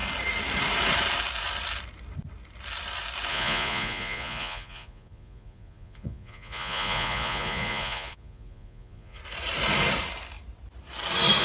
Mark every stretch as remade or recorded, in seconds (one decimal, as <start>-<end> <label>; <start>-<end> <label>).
0.0-3.3 recorded; 3.3-9.2 remade; 9.2-11.4 recorded